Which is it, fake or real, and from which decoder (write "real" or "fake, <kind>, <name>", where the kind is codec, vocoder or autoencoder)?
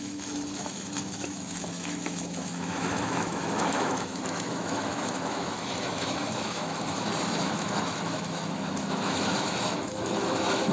fake, autoencoder, DAC-VAE